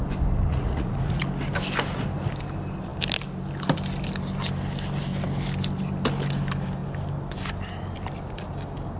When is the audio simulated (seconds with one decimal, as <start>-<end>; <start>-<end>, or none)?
0.5-1.2